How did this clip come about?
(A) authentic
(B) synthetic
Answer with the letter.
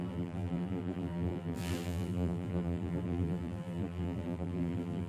B